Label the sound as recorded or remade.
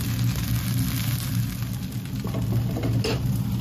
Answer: recorded